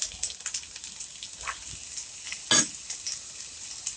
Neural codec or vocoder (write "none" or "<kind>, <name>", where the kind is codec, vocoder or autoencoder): none